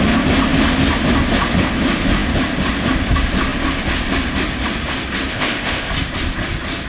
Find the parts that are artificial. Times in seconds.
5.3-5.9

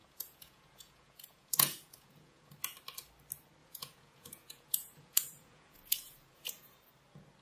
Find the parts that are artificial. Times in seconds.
0.0-2.5; 3.6-6.8

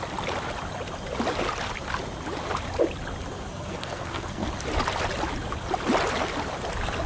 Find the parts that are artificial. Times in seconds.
3.5-4.5

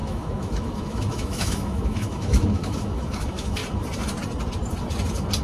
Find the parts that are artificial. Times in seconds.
0.0-3.6

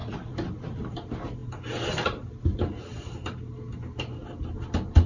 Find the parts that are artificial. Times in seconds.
0.0-0.9

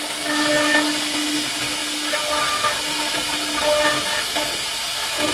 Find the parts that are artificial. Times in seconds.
none

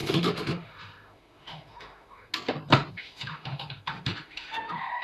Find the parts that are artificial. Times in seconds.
0.0-2.3; 2.9-5.0

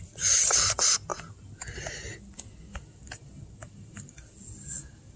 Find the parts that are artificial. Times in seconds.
none